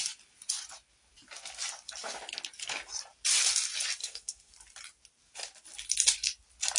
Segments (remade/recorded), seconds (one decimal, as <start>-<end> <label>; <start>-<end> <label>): 0.0-4.0 recorded; 4.0-4.5 remade; 4.5-6.8 recorded